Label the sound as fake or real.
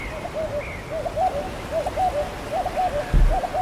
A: real